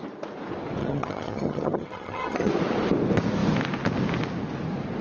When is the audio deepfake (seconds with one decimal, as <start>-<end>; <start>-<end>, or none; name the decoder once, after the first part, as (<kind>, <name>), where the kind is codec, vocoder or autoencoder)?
0.8-2.5 (vocoder, HiFi-GAN)